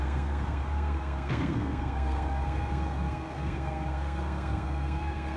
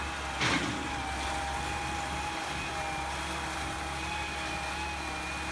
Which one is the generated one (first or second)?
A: first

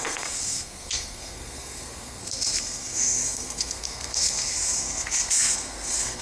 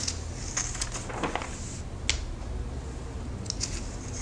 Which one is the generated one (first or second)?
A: first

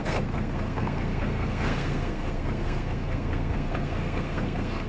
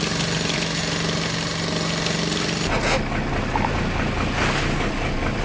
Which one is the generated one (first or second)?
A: first